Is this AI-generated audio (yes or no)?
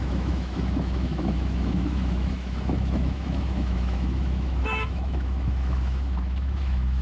yes